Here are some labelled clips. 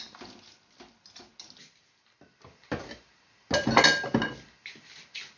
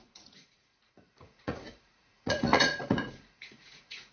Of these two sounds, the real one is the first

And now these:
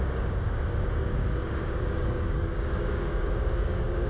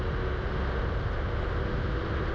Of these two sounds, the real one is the second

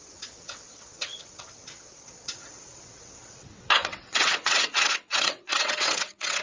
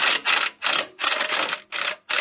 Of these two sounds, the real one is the second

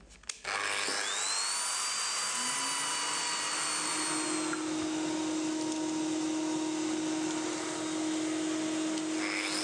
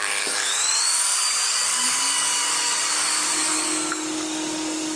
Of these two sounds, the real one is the first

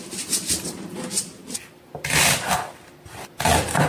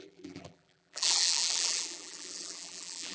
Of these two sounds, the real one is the first